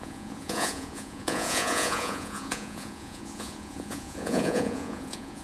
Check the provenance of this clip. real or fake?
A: fake